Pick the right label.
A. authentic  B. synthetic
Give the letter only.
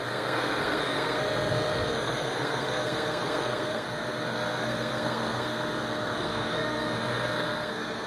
B